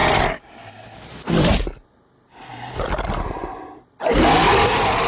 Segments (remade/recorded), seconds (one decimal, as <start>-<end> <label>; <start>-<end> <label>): 0.0-5.1 recorded